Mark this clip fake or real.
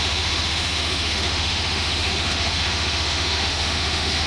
fake